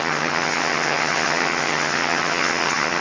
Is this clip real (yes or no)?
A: no